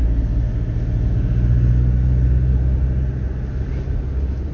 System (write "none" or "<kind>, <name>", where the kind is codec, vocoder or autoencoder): none